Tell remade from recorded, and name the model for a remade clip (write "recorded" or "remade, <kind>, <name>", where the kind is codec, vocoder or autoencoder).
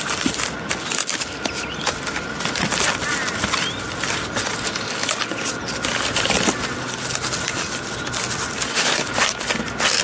recorded